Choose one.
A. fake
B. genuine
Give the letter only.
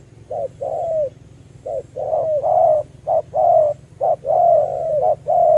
B